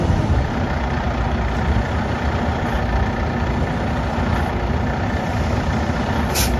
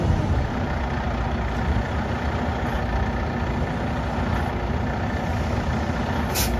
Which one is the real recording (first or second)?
second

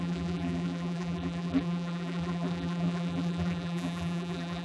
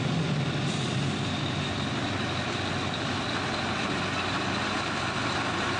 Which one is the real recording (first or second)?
second